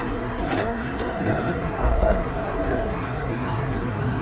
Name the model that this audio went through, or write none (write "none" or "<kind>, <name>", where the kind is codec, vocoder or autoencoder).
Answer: codec, SNAC